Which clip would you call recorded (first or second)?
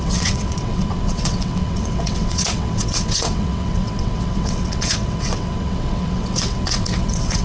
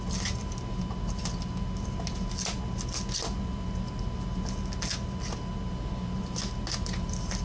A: second